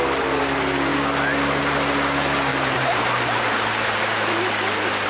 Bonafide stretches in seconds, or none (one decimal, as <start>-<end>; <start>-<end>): 0.0-2.5; 4.0-5.1